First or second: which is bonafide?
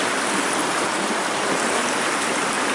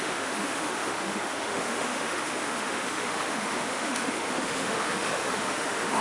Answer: first